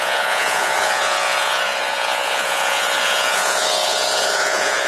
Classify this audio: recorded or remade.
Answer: remade